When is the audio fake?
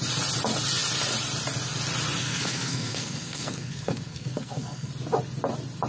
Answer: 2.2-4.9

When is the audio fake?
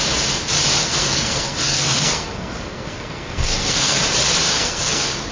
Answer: 0.8-4.0; 4.5-5.3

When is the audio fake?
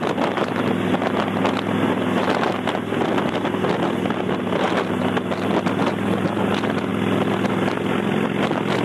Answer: none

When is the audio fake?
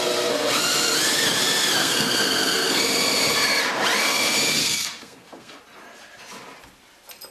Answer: 1.8-2.8; 4.6-5.6